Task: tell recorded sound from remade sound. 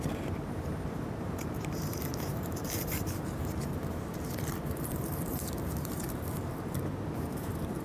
remade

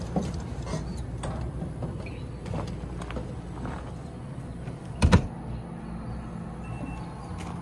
recorded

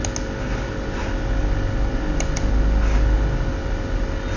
recorded